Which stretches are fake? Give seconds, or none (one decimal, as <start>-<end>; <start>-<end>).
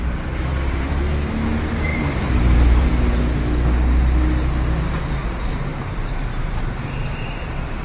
0.5-1.1; 1.9-2.9; 5.7-6.8